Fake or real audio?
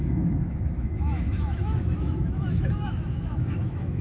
fake